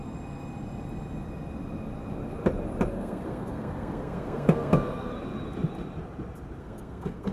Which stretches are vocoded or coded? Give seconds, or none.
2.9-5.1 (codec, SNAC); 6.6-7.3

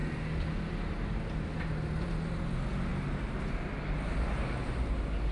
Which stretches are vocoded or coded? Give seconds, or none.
none

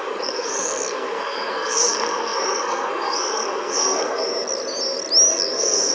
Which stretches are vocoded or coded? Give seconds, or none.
0.0-4.3 (codec, SNAC); 5.3-5.9

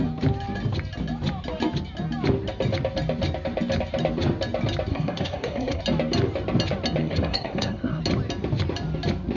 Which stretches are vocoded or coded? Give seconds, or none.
4.9-5.8 (codec, SNAC); 7.0-8.0

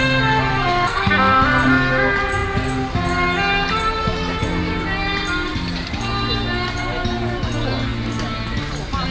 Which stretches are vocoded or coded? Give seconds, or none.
0.5-1.1 (codec, SNAC)